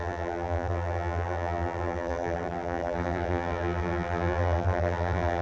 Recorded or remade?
remade